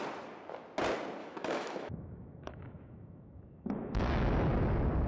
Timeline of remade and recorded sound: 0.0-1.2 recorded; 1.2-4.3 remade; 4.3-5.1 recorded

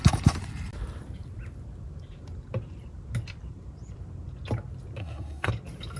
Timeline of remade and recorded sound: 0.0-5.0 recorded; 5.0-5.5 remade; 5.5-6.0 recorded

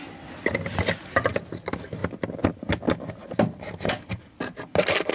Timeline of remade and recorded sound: 0.0-5.1 recorded

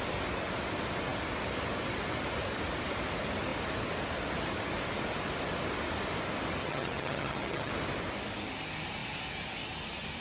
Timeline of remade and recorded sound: 0.0-6.6 recorded; 6.6-7.7 remade; 7.7-10.2 recorded

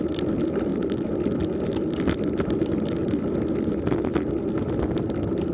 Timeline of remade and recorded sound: 0.0-5.5 recorded

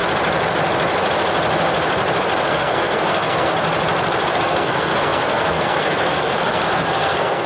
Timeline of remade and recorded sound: 0.0-2.5 recorded; 2.5-3.5 remade; 3.5-4.3 recorded; 4.3-7.5 remade

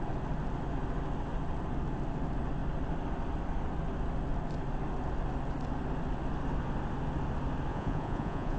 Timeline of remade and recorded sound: 0.0-7.7 recorded; 7.7-8.6 remade

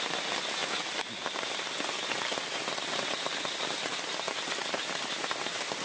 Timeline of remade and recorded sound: 0.0-4.6 recorded; 4.6-5.8 remade